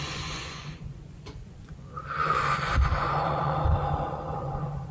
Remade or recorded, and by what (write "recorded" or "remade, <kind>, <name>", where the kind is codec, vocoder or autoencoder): remade, vocoder, Vocos